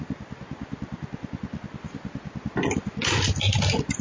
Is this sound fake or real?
real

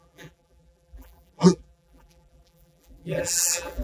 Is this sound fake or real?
fake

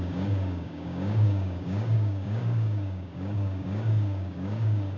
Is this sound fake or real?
fake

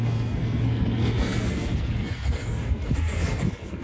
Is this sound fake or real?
fake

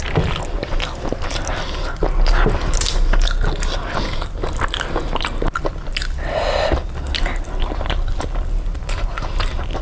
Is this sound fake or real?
real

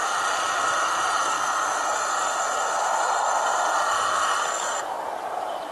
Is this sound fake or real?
real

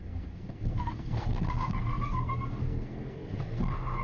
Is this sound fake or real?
fake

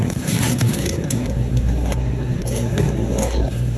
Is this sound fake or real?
fake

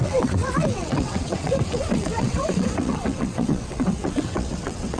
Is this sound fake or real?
fake